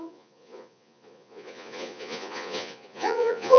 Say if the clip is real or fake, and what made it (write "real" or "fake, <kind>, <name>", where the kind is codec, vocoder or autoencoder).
fake, vocoder, Vocos